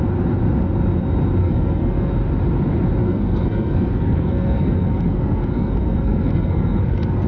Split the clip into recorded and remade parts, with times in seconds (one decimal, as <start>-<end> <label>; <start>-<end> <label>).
0.0-1.4 recorded; 1.4-2.1 remade; 2.1-3.0 recorded; 3.0-7.3 remade